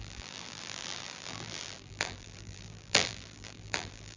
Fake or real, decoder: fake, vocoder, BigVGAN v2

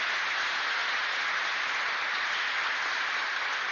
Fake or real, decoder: real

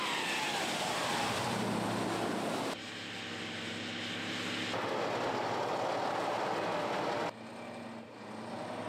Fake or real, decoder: real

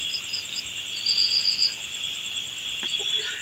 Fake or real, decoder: real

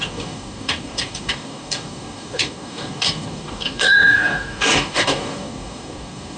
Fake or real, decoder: fake, codec, DAC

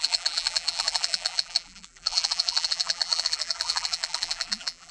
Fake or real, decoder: fake, vocoder, BigVGAN v2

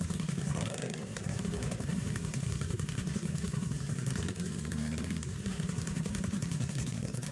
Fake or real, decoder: fake, codec, SNAC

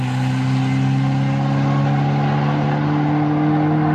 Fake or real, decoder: real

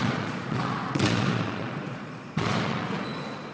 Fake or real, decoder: fake, vocoder, Vocos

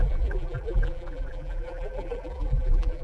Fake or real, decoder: fake, vocoder, BigVGAN v2